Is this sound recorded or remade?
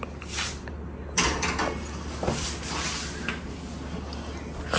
recorded